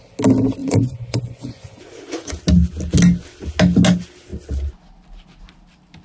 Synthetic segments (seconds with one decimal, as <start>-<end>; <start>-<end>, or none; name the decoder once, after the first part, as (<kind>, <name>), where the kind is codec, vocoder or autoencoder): 0.6-2.4 (vocoder, Vocos)